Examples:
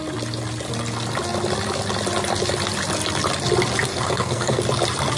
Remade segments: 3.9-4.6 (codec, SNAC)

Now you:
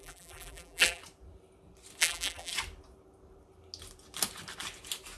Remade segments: 0.0-1.0 (vocoder, BigVGAN v2); 2.0-2.5

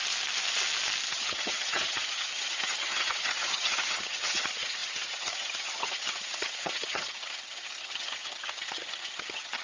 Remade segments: 1.1-9.6 (vocoder, HiFi-GAN)